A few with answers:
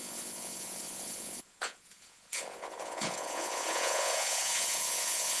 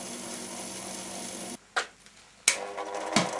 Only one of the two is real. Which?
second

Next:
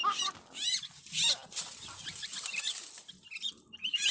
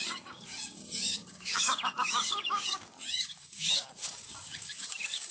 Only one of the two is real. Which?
first